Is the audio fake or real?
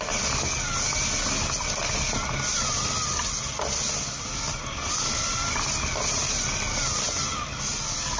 real